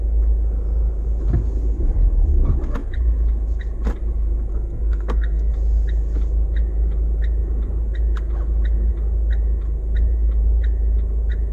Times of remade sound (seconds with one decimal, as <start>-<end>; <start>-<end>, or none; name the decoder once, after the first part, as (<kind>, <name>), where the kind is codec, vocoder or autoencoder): 4.5-5.5 (codec, SNAC)